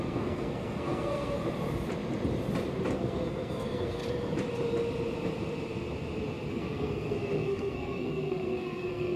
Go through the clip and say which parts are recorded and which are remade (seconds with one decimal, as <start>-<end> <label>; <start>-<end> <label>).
0.0-1.4 remade; 1.4-2.9 recorded; 2.9-4.0 remade; 4.0-6.5 recorded; 6.5-9.2 remade